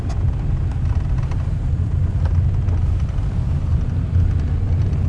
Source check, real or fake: real